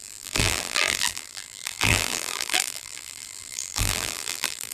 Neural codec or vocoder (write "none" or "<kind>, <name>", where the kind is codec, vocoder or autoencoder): vocoder, BigVGAN v2